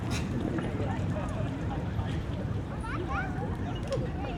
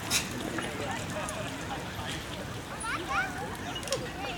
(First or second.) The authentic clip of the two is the second